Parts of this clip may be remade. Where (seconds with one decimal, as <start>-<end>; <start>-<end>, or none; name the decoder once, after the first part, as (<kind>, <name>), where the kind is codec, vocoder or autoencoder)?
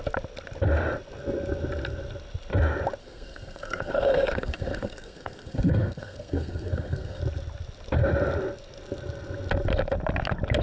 3.0-7.2 (codec, SNAC)